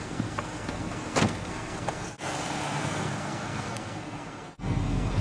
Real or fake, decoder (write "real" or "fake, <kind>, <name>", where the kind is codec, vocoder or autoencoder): fake, codec, SNAC